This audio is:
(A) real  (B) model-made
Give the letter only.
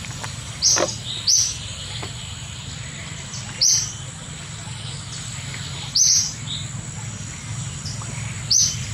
A